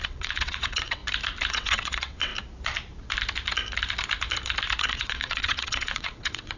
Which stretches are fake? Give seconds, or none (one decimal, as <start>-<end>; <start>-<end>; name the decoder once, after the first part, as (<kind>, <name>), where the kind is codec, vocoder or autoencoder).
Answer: 0.0-1.0 (vocoder, WaveNeXt); 1.5-2.3; 4.8-6.6